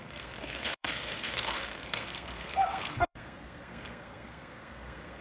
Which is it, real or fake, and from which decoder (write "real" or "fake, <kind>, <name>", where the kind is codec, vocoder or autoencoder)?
fake, codec, SNAC